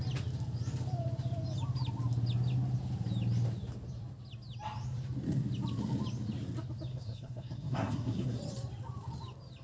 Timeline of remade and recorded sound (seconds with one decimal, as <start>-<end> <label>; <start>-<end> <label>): 0.0-6.9 recorded; 6.9-8.4 remade; 8.4-9.6 recorded

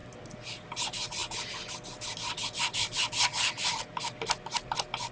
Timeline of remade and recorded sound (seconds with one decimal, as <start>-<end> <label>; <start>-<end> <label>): 0.0-5.1 recorded

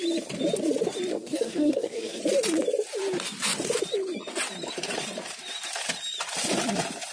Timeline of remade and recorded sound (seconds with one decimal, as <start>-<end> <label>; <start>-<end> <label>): 0.0-1.1 recorded; 1.1-2.2 remade; 2.2-7.1 recorded

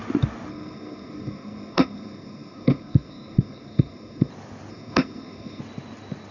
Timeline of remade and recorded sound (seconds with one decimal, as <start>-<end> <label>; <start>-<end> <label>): 0.0-0.5 recorded; 0.5-4.3 remade; 4.3-4.7 recorded; 4.7-5.6 remade; 5.6-6.3 recorded

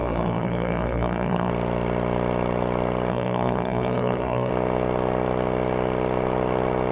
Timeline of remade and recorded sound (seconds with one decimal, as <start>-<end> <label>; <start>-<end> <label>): 0.0-1.5 remade; 1.5-3.1 recorded; 3.1-4.5 remade; 4.5-6.9 recorded

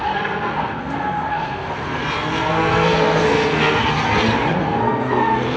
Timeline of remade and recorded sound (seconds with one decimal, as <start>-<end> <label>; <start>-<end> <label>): 0.0-2.0 remade; 2.0-2.5 recorded; 2.5-3.8 remade; 3.8-4.6 recorded; 4.6-5.6 remade

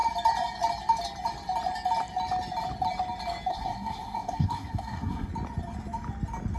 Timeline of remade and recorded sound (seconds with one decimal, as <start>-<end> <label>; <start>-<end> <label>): 0.0-3.5 recorded; 3.5-5.3 remade; 5.3-6.6 recorded